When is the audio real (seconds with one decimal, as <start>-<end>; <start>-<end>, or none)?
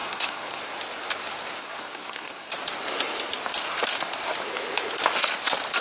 0.6-1.6; 2.5-5.8